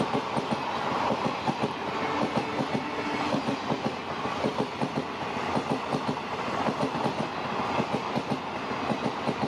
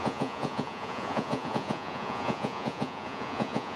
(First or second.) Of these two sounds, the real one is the first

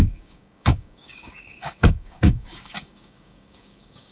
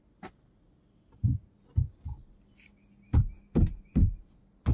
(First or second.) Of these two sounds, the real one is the second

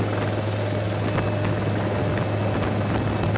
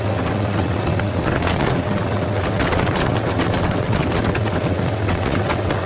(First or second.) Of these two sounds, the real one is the first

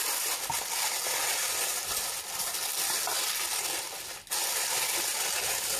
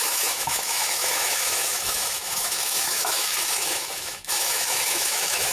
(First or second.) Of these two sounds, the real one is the first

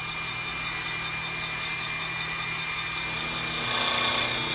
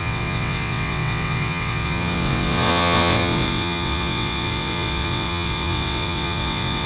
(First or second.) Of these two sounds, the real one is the first